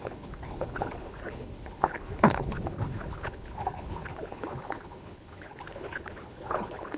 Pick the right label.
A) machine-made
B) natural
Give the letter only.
A